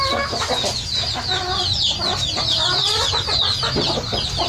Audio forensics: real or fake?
real